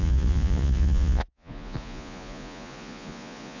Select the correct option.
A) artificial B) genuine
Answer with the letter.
A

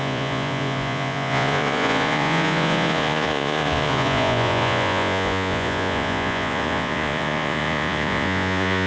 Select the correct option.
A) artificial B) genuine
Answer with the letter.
A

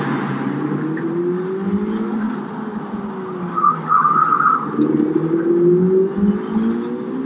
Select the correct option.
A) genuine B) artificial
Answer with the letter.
A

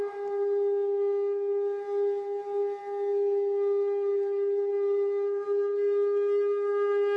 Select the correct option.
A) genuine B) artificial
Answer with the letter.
A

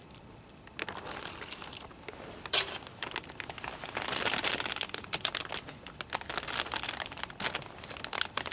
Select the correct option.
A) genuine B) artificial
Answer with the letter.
A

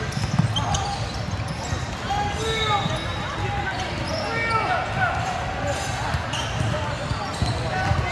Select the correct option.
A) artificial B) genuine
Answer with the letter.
B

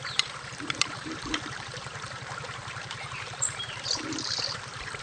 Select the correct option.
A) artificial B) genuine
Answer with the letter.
A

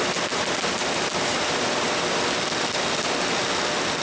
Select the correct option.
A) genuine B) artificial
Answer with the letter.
A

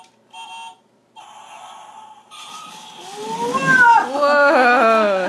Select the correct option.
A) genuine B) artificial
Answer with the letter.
A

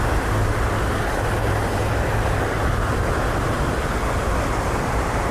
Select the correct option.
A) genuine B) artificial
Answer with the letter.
A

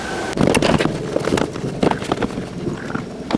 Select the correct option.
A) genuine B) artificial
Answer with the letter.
A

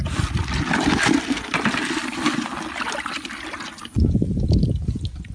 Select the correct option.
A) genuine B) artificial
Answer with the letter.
A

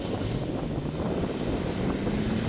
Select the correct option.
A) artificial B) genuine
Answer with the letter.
B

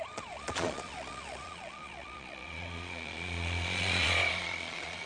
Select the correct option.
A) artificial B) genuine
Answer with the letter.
A